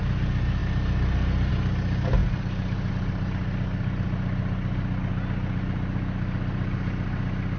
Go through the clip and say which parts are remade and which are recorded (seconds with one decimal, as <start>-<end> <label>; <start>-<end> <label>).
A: 0.0-7.6 recorded